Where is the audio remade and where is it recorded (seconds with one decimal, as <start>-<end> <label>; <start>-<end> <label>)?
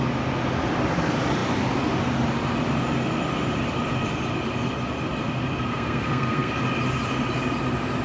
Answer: 0.0-5.7 recorded; 5.7-6.5 remade; 6.5-8.0 recorded